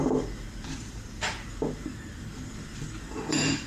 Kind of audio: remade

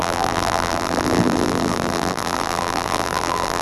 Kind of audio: remade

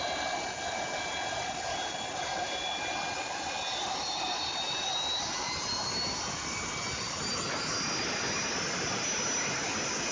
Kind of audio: recorded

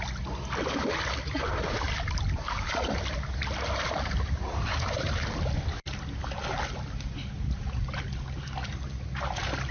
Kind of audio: recorded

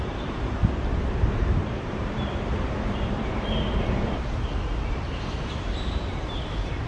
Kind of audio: remade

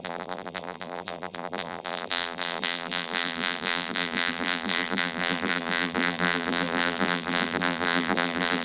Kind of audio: remade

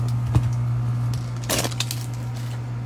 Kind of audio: recorded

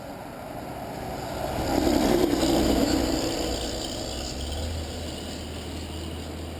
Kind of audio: recorded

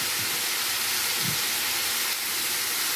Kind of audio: recorded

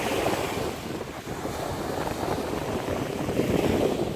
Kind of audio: recorded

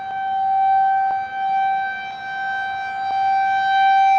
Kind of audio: recorded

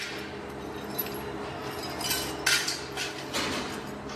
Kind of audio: recorded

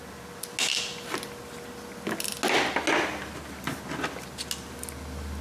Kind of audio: recorded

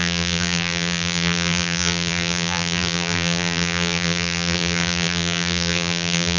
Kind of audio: remade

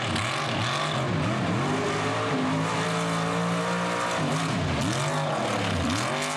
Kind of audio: recorded